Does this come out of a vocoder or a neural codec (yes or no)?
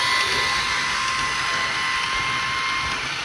no